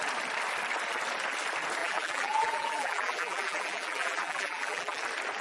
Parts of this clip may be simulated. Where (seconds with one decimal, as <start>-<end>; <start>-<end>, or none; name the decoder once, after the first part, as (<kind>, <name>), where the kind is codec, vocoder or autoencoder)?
1.8-5.0 (vocoder, BigVGAN v2)